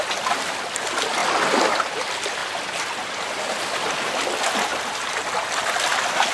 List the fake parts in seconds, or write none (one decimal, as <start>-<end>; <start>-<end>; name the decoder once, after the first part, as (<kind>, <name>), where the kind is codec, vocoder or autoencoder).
none